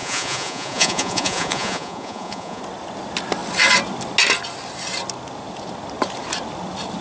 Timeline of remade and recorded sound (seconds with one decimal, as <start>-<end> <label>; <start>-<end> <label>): 0.0-2.6 remade; 2.6-7.0 recorded

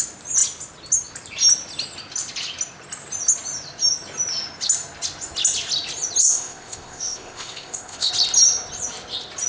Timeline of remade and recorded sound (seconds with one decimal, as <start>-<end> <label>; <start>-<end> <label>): 0.0-6.2 recorded; 6.2-8.1 remade; 8.1-9.5 recorded

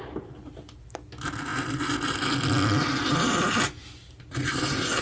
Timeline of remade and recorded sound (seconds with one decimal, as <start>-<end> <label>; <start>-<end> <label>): 0.0-5.0 recorded

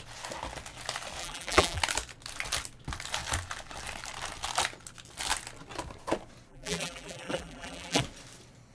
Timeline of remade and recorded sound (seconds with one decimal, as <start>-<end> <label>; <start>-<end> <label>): 0.0-1.2 recorded; 1.2-1.8 remade; 1.8-6.5 recorded; 6.5-8.0 remade; 8.0-8.7 recorded

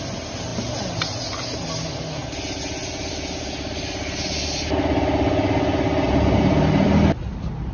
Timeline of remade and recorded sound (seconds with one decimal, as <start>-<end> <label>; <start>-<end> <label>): 0.0-7.7 recorded

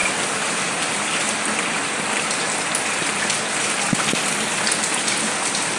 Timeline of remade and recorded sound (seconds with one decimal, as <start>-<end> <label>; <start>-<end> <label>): 0.0-5.8 recorded